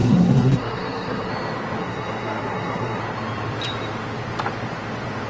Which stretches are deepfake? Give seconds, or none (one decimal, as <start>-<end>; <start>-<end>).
0.0-1.3; 1.8-3.0